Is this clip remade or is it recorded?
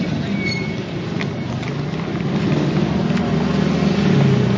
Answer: recorded